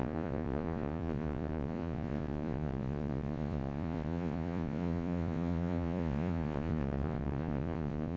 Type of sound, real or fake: fake